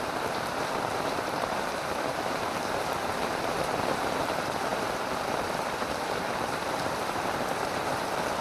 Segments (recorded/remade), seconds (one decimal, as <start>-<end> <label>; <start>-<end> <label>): 0.0-8.4 remade